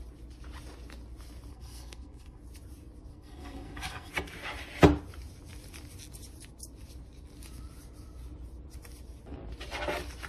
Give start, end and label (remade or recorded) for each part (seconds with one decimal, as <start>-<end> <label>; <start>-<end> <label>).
0.0-1.5 recorded; 1.5-2.4 remade; 2.4-3.1 recorded; 3.1-4.1 remade; 4.1-10.3 recorded